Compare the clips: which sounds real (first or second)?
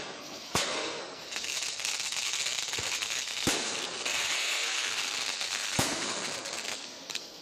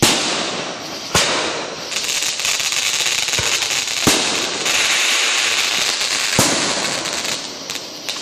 second